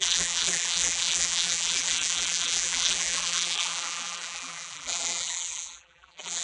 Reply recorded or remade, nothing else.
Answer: remade